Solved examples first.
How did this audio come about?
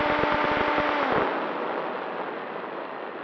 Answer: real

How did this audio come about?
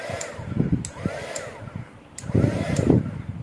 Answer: fake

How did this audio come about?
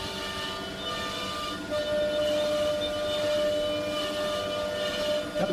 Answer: real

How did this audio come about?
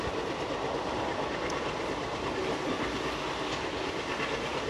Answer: real